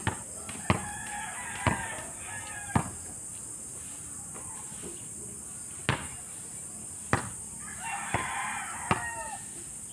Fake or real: real